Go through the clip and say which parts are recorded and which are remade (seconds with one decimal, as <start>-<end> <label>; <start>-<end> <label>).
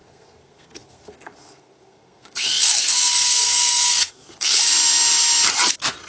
0.0-4.7 remade; 4.7-6.1 recorded